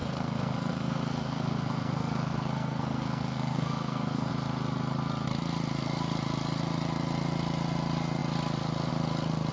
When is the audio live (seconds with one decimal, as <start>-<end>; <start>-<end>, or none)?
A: 4.3-9.5